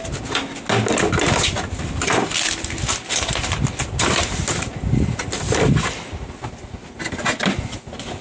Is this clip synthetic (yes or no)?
no